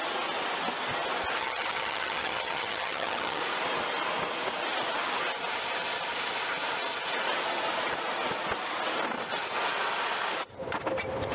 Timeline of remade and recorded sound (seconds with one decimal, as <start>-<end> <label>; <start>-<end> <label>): 0.0-1.4 recorded; 1.4-3.4 remade; 3.4-11.3 recorded